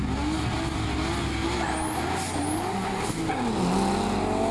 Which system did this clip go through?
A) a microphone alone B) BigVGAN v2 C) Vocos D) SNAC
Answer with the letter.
A